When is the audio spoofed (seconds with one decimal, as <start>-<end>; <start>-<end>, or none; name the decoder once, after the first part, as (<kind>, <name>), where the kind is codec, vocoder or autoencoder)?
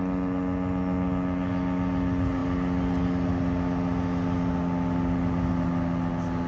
none